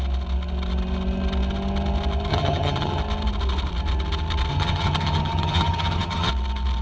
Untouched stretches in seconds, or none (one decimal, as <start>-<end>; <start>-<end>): 0.0-2.3; 3.0-4.5; 6.3-6.8